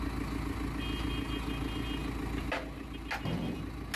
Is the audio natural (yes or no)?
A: yes